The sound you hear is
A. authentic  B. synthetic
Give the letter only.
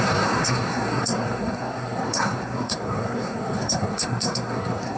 B